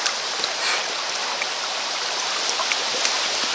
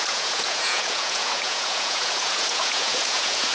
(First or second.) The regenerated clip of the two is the second